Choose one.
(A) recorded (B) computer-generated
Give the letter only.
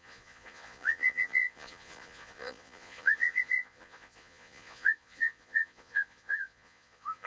B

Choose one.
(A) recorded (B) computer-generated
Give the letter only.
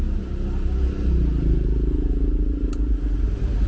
A